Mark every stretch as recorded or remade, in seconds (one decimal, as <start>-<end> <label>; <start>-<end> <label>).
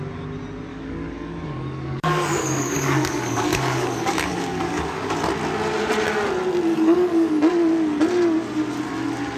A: 0.0-0.7 recorded; 0.7-5.1 remade; 5.1-6.7 recorded; 6.7-7.3 remade; 7.3-9.4 recorded